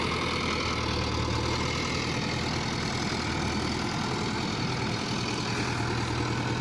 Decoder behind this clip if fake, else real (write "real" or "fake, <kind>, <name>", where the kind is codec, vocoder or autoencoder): real